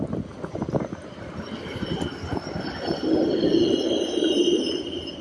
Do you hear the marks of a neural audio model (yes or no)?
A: yes